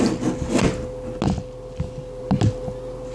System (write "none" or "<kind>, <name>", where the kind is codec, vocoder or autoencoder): none